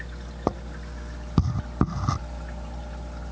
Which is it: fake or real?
real